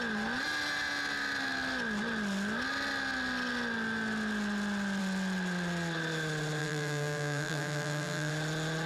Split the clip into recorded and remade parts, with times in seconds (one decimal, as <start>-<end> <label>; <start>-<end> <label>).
0.0-6.6 recorded; 6.6-8.3 remade; 8.3-8.9 recorded